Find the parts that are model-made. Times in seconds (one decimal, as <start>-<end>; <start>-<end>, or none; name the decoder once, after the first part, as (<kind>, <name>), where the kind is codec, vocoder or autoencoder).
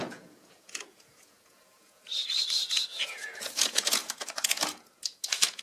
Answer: 0.0-2.1 (vocoder, Vocos); 2.7-5.6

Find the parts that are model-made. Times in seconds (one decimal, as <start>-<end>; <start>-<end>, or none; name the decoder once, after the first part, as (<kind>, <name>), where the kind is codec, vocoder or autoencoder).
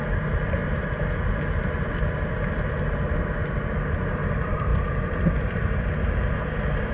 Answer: none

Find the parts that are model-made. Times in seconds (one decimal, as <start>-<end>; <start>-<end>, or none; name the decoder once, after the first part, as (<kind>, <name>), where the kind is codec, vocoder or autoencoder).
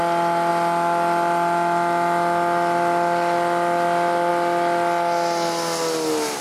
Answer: none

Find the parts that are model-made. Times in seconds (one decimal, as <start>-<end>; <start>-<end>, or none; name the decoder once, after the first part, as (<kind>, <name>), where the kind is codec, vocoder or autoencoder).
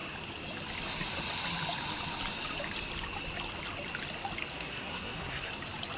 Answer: 4.5-5.5 (codec, SNAC)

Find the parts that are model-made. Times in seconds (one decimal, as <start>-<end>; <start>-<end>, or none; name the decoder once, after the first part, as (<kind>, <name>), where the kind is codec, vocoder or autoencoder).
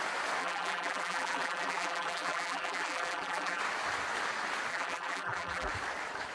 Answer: 0.4-3.6 (vocoder, BigVGAN v2); 4.7-5.7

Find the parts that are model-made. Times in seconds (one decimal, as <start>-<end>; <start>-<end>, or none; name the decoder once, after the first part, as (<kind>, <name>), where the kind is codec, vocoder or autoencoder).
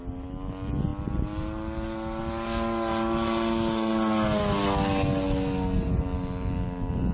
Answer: none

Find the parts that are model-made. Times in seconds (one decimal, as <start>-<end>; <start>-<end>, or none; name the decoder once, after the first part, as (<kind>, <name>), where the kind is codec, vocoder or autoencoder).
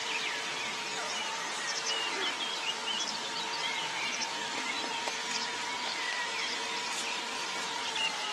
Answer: 0.0-3.4 (vocoder, BigVGAN v2); 4.4-6.6